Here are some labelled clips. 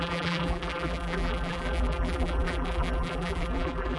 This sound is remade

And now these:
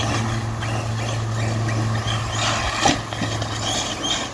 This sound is recorded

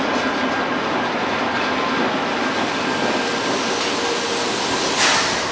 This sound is recorded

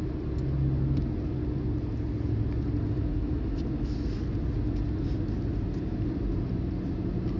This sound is recorded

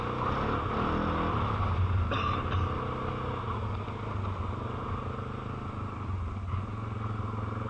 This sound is recorded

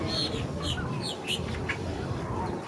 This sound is recorded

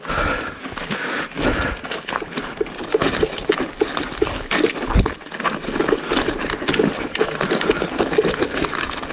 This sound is recorded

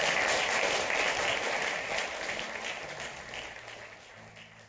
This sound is recorded